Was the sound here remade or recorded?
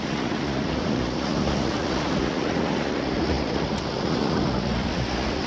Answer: remade